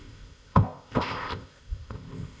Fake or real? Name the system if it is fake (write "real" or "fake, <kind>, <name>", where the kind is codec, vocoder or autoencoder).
fake, codec, ZipCodec